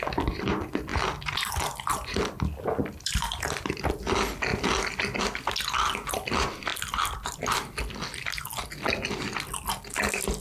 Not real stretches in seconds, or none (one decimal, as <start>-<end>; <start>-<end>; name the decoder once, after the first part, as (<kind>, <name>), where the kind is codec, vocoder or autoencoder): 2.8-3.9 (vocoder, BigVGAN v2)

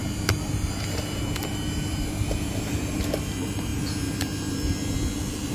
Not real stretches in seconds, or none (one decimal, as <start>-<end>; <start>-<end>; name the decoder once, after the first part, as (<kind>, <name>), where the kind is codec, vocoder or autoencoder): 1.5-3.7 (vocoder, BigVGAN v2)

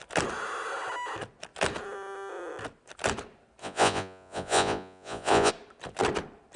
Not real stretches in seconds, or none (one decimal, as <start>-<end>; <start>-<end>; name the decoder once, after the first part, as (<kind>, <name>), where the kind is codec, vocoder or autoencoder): 3.6-5.5 (vocoder, Vocos)

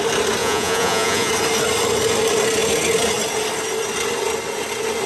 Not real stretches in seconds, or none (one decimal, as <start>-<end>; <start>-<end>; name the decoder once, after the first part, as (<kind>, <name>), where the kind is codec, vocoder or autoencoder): 0.4-1.3 (vocoder, Vocos)

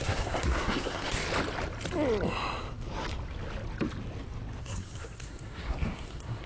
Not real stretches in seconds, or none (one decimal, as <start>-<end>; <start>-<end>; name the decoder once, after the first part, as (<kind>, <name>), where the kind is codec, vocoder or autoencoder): 0.0-1.2 (codec, SNAC); 4.6-6.5